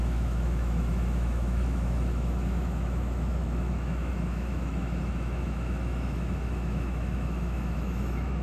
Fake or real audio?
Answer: fake